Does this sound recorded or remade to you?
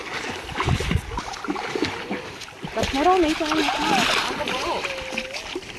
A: recorded